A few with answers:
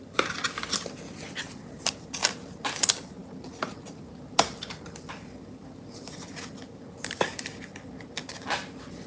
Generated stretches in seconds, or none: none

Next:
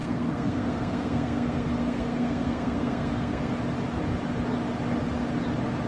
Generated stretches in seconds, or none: 0.0-3.5 (codec, SNAC)

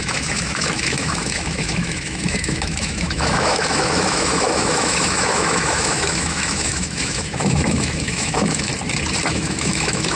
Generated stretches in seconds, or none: 0.0-8.7 (autoencoder, DAC-VAE); 9.3-10.2

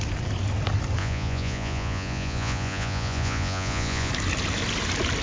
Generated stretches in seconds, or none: 1.0-4.1 (vocoder, Vocos)